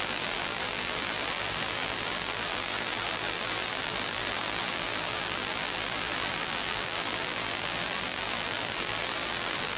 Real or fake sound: fake